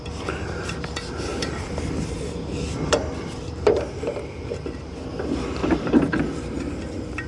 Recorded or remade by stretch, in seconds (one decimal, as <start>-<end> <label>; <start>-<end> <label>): 0.0-1.3 recorded; 1.3-5.0 remade; 5.0-5.6 recorded; 5.6-6.2 remade; 6.2-7.3 recorded